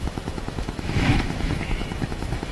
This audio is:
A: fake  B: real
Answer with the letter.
A